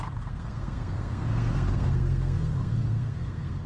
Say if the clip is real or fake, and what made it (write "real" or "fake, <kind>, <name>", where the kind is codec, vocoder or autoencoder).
fake, codec, SNAC